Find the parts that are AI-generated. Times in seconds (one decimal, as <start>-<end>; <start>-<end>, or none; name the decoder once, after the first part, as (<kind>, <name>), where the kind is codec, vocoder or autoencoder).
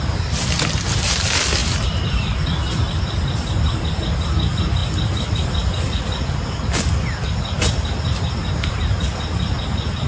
1.6-2.2 (vocoder, BigVGAN v2)